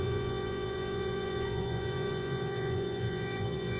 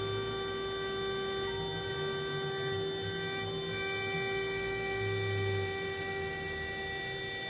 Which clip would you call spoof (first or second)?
first